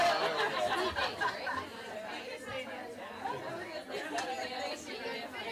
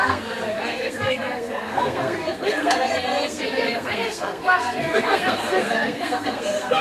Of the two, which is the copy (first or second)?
second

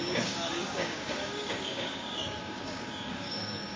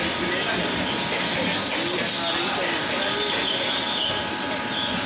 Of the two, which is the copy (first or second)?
first